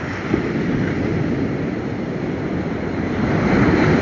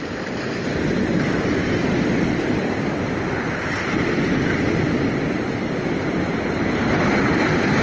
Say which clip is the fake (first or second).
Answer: second